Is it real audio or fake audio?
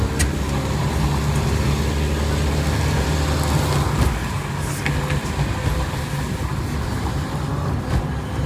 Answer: real